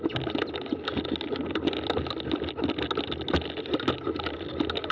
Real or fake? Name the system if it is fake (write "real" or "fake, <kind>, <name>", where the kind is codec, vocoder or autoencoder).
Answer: real